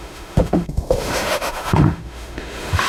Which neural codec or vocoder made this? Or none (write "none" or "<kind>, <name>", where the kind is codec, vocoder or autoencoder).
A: autoencoder, DAC-VAE